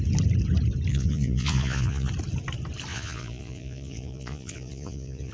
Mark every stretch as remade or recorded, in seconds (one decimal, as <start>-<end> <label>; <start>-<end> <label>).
0.0-0.9 recorded; 0.9-2.1 remade; 2.1-2.9 recorded; 2.9-5.3 remade